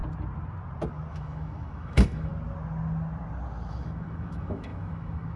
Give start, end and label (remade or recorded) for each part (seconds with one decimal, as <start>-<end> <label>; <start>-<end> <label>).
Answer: 0.0-1.1 recorded; 1.1-2.3 remade; 2.3-3.7 recorded; 3.7-5.4 remade